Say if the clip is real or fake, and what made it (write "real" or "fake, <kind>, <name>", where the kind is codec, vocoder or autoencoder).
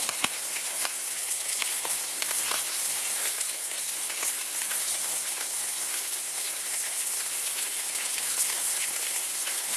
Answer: fake, codec, SNAC